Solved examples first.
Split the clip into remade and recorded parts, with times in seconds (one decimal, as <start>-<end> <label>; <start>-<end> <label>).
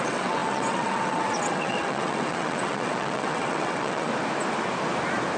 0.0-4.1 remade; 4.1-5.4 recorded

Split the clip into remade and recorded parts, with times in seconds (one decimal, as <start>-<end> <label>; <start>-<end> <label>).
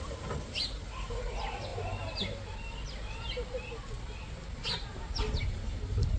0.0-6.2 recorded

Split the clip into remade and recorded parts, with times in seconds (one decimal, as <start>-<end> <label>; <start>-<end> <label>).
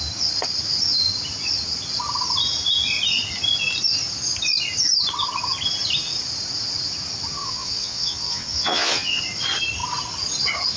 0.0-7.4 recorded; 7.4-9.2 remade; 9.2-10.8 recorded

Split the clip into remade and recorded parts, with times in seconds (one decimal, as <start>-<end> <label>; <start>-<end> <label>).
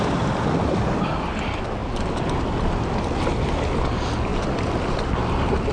0.0-5.7 recorded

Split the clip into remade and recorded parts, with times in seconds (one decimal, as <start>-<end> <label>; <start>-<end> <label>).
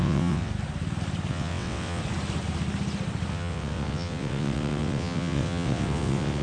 0.0-0.5 remade; 0.5-1.3 recorded; 1.3-2.0 remade; 2.0-3.3 recorded; 3.3-6.4 remade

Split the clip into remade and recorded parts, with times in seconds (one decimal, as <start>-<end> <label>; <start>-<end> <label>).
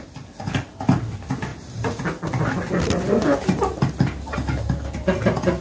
0.0-5.6 recorded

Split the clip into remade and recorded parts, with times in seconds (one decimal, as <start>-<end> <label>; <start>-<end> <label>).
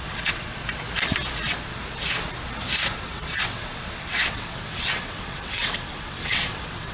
0.0-0.6 remade; 0.6-2.8 recorded; 2.8-6.9 remade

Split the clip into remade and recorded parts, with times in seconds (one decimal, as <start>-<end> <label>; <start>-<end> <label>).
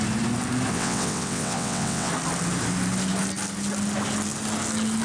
0.0-0.7 recorded; 0.7-2.1 remade; 2.1-5.0 recorded